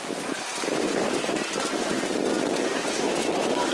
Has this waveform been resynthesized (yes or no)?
no